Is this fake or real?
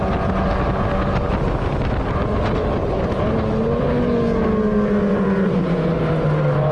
real